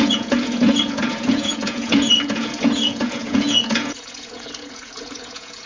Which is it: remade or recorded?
remade